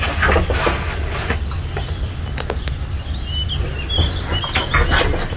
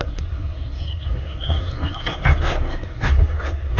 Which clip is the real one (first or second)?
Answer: first